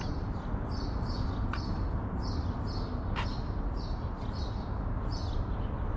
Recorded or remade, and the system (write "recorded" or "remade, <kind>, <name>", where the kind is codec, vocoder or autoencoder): recorded